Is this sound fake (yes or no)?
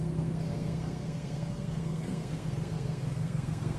yes